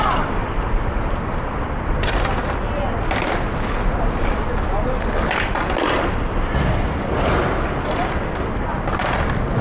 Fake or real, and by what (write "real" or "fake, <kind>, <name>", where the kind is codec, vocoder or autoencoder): real